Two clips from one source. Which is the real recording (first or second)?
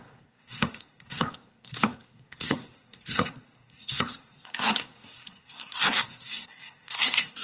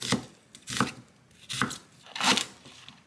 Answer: second